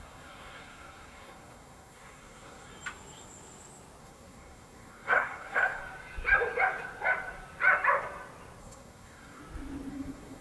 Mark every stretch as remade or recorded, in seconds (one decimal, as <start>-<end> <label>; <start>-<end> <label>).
0.0-2.7 remade; 2.7-4.0 recorded; 4.0-5.8 remade; 5.8-8.6 recorded; 8.6-9.4 remade; 9.4-9.9 recorded; 9.9-10.4 remade